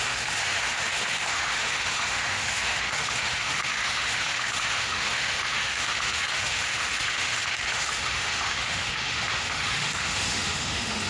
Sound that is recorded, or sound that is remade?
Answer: remade